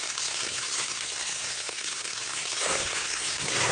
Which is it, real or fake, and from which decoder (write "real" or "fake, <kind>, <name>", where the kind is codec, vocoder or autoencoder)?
fake, codec, SNAC